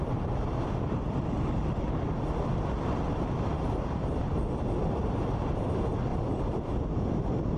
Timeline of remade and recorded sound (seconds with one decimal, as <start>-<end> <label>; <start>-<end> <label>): 0.0-6.1 recorded; 6.1-6.8 remade; 6.8-7.6 recorded